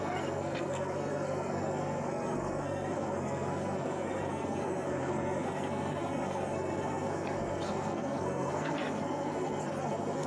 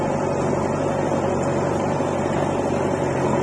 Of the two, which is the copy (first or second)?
first